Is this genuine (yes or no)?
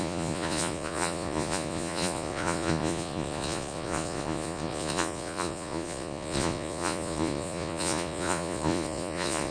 no